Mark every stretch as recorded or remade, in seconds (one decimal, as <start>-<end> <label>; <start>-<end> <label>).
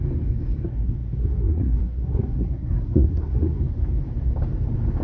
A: 0.0-0.6 recorded; 0.6-3.6 remade; 3.6-5.0 recorded